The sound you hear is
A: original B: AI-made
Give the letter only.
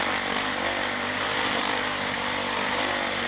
A